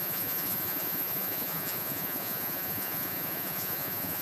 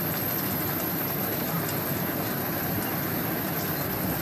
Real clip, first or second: second